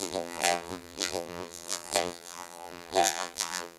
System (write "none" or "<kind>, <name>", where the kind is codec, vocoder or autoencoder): vocoder, BigVGAN v2